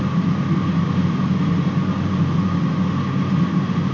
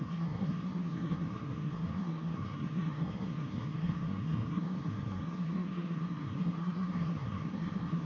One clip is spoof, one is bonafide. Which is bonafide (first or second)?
first